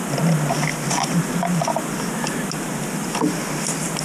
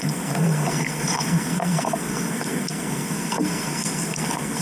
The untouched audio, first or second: first